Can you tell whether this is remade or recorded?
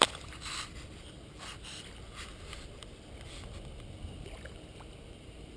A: recorded